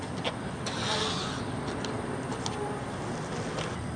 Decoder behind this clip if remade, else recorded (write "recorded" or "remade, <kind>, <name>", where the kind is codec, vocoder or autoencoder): recorded